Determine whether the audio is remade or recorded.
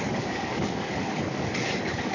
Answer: remade